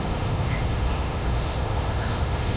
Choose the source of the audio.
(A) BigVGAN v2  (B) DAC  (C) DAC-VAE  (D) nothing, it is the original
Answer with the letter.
C